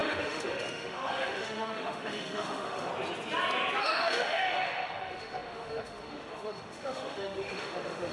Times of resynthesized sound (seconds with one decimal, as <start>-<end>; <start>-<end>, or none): 0.0-2.9; 3.8-8.1

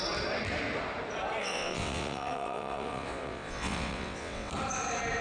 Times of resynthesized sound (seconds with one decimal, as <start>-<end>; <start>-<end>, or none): 1.4-4.5

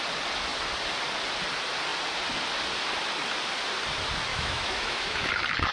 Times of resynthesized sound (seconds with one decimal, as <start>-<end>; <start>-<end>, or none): 4.3-5.3